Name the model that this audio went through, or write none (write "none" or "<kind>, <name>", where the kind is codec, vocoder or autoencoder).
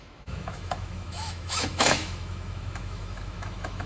autoencoder, DAC-VAE